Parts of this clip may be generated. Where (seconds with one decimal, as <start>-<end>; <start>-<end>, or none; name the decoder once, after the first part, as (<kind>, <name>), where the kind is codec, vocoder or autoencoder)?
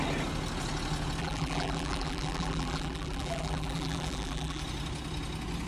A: 1.2-4.6 (vocoder, BigVGAN v2)